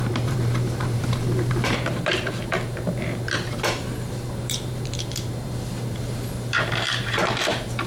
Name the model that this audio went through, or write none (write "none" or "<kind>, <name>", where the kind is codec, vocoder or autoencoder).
vocoder, BigVGAN v2